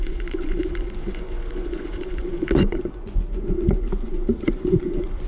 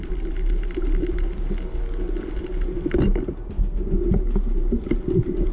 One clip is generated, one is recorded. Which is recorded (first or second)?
second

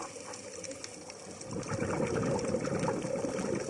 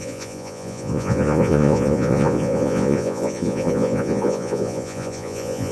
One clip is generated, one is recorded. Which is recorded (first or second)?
first